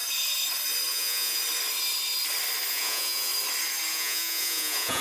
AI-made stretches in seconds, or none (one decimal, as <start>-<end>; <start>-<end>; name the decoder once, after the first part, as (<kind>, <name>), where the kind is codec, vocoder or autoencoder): 0.9-1.4 (vocoder, Vocos); 2.7-3.3; 3.9-5.0